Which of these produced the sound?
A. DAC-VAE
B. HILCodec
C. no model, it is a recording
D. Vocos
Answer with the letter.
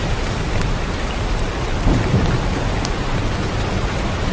C